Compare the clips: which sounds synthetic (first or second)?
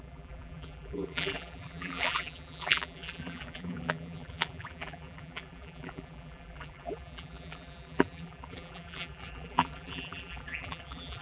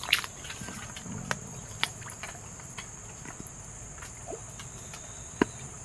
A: first